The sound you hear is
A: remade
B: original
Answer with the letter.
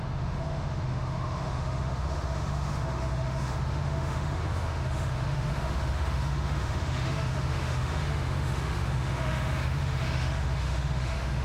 A